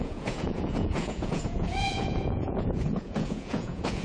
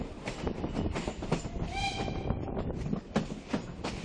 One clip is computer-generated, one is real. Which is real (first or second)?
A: second